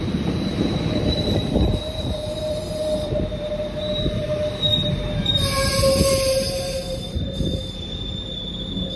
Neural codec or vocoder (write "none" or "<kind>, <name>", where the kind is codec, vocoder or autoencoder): vocoder, BigVGAN v2